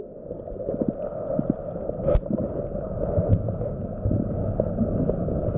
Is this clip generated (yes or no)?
no